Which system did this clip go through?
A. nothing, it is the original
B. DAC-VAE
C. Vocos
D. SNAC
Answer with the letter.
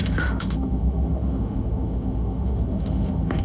B